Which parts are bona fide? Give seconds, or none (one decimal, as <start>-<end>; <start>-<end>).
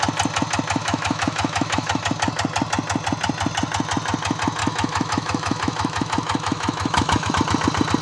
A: 0.0-0.8; 2.0-4.6; 7.3-8.0